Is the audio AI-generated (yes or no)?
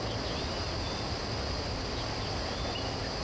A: no